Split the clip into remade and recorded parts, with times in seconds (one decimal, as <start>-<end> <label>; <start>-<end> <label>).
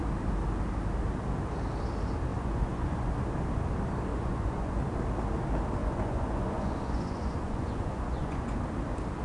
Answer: 0.0-2.3 recorded; 2.3-3.1 remade; 3.1-4.1 recorded; 4.1-4.8 remade; 4.8-5.8 recorded; 5.8-8.6 remade; 8.6-9.2 recorded